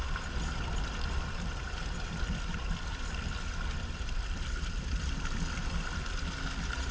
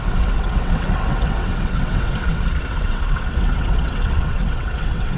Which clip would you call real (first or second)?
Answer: first